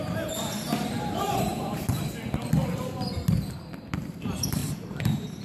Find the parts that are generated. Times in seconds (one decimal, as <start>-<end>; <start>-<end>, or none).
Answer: 0.0-1.5; 4.1-5.4